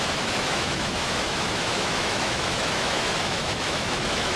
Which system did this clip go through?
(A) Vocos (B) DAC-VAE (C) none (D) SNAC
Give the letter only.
B